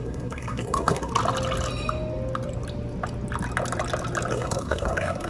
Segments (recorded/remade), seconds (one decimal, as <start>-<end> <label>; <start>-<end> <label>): 0.0-1.1 remade; 1.1-4.3 recorded; 4.3-5.3 remade